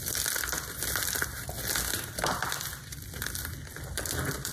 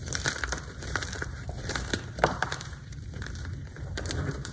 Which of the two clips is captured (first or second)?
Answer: first